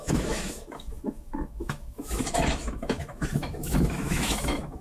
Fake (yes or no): yes